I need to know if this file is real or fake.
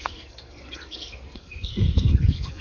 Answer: fake